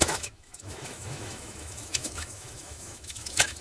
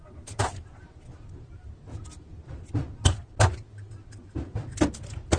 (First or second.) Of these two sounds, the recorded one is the second